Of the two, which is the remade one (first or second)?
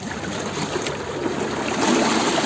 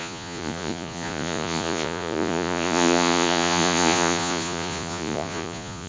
second